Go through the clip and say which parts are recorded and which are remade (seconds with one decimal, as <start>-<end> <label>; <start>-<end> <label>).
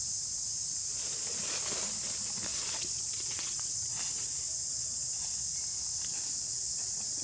0.0-2.5 recorded; 2.5-3.9 remade; 3.9-7.2 recorded